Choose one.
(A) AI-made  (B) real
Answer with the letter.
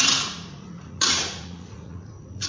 A